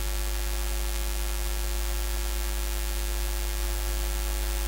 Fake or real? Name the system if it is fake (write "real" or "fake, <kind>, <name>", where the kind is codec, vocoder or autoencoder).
real